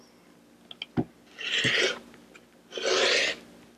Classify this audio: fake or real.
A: real